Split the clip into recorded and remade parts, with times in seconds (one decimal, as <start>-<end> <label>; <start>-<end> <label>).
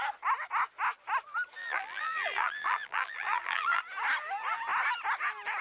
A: 0.0-1.6 recorded; 1.6-3.8 remade; 3.8-5.6 recorded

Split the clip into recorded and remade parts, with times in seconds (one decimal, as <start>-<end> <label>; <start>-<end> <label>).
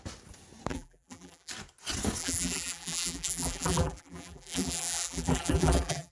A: 0.0-0.7 recorded; 0.7-1.5 remade; 1.5-2.2 recorded; 2.2-6.1 remade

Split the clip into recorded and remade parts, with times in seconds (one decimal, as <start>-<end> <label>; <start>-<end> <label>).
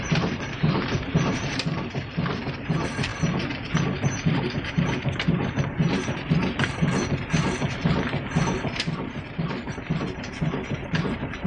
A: 0.0-11.5 remade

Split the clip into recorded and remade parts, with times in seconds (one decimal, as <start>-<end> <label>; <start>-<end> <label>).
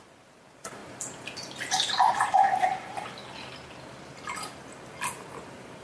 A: 0.0-3.2 remade; 3.2-5.1 recorded; 5.1-5.8 remade